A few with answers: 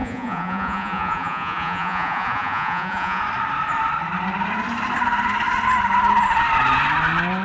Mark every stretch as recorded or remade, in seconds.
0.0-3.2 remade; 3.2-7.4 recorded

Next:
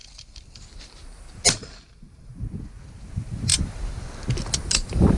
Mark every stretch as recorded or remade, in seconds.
0.0-5.2 recorded

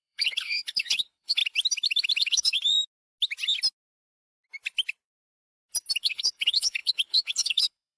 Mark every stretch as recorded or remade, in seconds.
0.0-1.4 remade; 1.4-2.2 recorded; 2.2-2.6 remade; 2.6-6.0 recorded; 6.0-8.0 remade

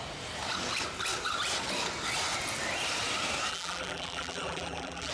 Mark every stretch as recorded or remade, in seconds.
0.0-3.5 recorded; 3.5-5.1 remade

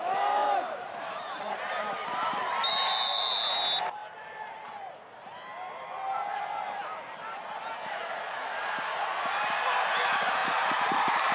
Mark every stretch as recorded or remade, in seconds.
0.0-0.4 recorded; 0.4-2.7 remade; 2.7-10.4 recorded; 10.4-11.3 remade

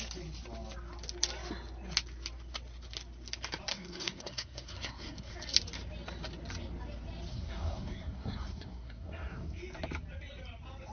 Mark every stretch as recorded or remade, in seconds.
0.0-3.7 recorded; 3.7-5.3 remade; 5.3-7.3 recorded; 7.3-9.6 remade; 9.6-10.9 recorded

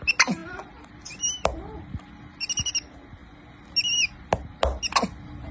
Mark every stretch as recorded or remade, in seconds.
0.0-5.5 recorded